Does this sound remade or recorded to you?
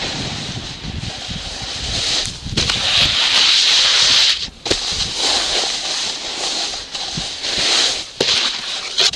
recorded